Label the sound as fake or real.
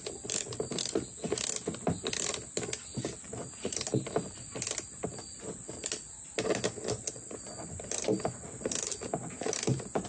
real